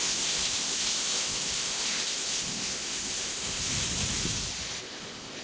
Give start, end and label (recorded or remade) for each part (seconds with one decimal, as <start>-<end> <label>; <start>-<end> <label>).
0.0-3.6 remade; 3.6-4.8 recorded; 4.8-5.4 remade